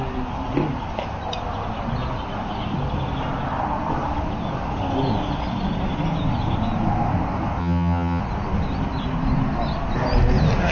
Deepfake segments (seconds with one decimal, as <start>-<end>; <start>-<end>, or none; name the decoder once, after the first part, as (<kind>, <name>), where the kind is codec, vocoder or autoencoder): 7.6-8.2 (vocoder, HiFi-GAN)